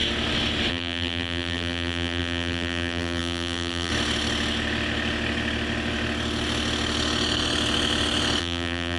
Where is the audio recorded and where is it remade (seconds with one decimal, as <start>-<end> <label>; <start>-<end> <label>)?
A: 0.0-0.7 recorded; 0.7-3.9 remade; 3.9-8.4 recorded; 8.4-9.0 remade